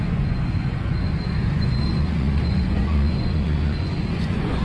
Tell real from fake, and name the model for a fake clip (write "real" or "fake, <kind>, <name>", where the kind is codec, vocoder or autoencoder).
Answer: fake, vocoder, Vocos